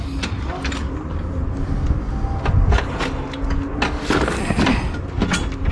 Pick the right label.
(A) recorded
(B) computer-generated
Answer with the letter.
A